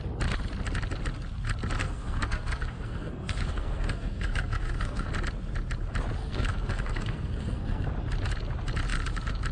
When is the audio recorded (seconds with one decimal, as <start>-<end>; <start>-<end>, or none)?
0.0-1.8; 5.1-6.2; 7.9-9.5